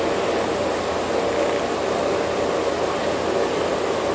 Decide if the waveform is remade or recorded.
recorded